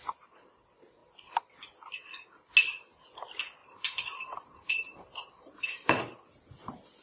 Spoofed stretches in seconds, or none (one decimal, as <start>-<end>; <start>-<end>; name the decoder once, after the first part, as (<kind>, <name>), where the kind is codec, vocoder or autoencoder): 3.6-6.0 (vocoder, BigVGAN v2)